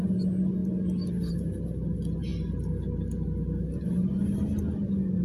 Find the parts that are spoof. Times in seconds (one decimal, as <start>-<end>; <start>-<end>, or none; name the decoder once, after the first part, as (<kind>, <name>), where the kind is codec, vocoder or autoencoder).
none